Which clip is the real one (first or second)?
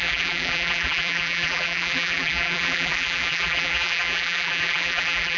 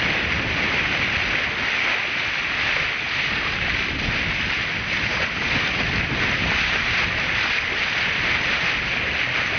second